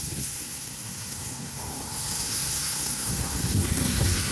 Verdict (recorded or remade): remade